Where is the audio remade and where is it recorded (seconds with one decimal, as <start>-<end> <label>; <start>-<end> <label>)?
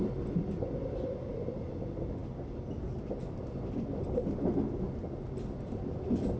0.0-6.4 recorded